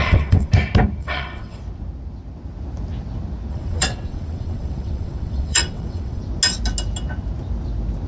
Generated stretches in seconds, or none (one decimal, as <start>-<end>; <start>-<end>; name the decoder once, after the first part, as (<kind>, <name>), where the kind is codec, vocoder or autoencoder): 0.0-0.5 (vocoder, WaveNeXt); 1.0-1.6; 3.5-6.2